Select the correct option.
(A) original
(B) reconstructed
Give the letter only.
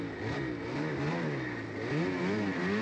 A